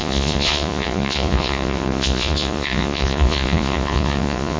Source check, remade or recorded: remade